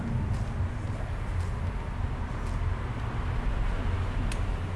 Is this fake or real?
real